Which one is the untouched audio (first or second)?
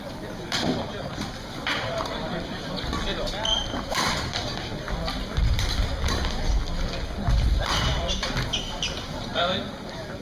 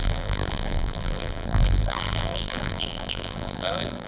first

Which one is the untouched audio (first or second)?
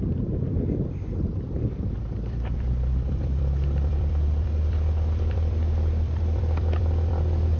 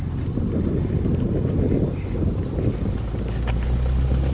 second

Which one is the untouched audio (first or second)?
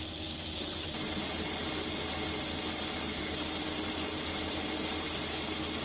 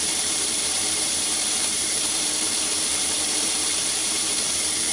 first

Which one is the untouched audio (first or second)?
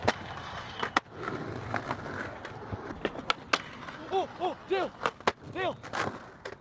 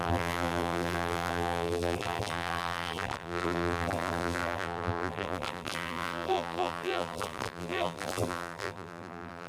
first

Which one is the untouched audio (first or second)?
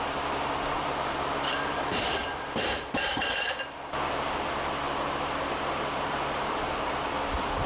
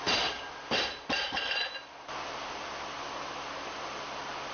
second